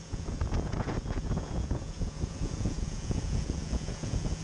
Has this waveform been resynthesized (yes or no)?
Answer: yes